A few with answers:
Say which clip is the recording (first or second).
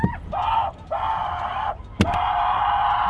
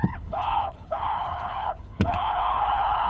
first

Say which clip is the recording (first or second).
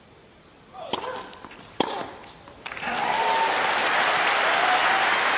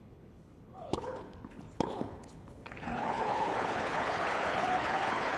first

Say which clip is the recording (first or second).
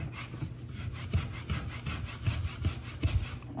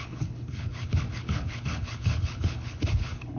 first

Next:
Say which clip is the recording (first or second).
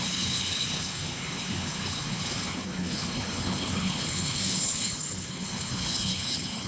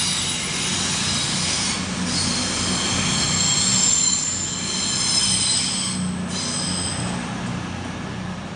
second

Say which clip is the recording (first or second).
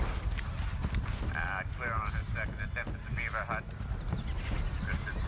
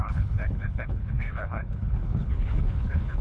first